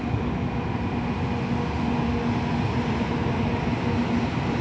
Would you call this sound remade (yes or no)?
no